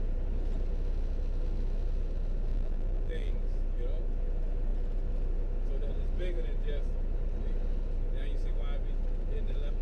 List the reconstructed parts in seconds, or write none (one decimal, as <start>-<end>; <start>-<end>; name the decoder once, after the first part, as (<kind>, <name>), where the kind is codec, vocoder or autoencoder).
2.5-3.3 (vocoder, BigVGAN v2)